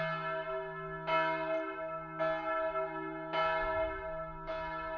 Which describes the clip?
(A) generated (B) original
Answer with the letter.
B